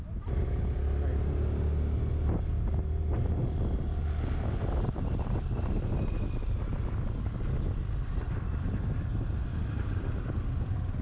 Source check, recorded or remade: recorded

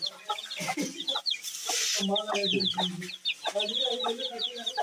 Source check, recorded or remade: recorded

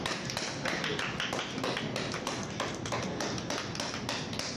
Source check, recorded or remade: recorded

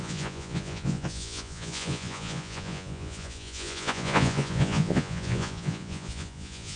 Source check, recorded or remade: remade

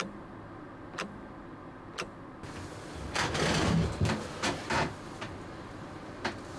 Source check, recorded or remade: recorded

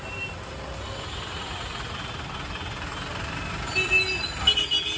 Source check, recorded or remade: recorded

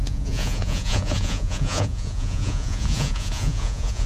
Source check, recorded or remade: remade